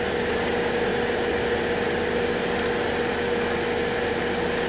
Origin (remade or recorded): recorded